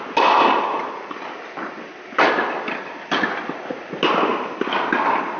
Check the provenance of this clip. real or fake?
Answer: real